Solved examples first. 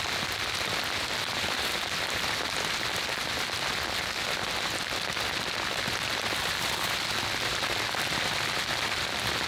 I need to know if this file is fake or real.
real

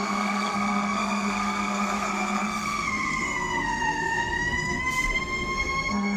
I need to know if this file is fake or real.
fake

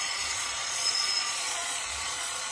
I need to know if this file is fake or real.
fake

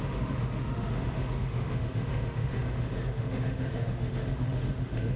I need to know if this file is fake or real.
fake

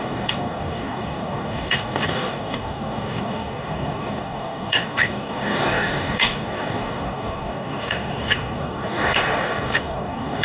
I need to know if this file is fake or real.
fake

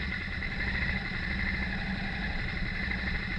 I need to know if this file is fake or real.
real